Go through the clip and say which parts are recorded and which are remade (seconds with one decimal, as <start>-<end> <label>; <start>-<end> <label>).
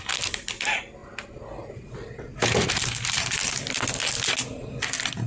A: 0.0-1.0 recorded; 1.0-3.5 remade; 3.5-5.3 recorded